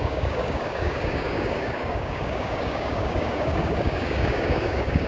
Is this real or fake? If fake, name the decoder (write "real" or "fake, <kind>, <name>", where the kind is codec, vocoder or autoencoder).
fake, codec, DAC